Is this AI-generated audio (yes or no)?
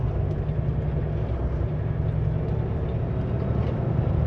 no